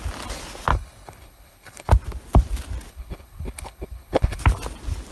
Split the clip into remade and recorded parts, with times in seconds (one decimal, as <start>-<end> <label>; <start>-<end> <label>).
0.0-0.7 recorded; 0.7-1.9 remade; 1.9-2.9 recorded; 2.9-4.4 remade; 4.4-5.1 recorded